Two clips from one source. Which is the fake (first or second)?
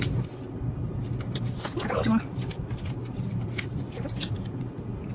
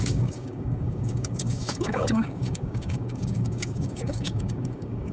second